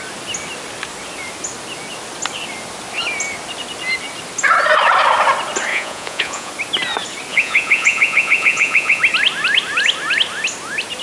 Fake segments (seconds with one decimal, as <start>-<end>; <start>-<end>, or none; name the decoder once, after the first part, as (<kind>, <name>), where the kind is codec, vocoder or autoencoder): 5.7-6.5 (vocoder, Vocos); 7.3-9.0